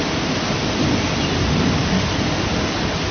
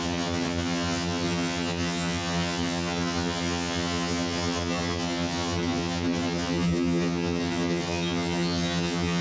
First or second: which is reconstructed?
second